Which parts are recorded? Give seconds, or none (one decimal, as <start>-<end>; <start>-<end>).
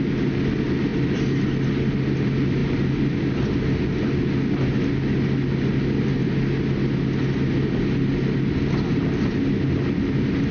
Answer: 0.0-10.5